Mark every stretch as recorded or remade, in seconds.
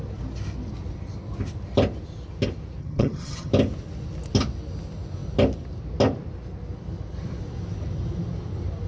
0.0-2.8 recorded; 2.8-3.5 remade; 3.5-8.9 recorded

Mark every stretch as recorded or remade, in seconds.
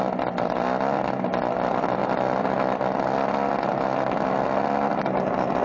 0.0-5.6 recorded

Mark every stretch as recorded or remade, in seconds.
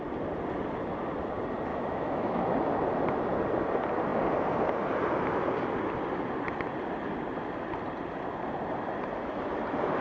0.0-1.7 recorded; 1.7-2.4 remade; 2.4-10.0 recorded